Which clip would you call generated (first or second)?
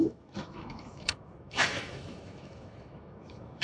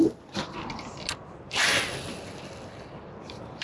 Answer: first